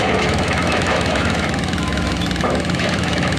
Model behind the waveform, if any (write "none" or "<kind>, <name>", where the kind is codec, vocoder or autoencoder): autoencoder, DAC-VAE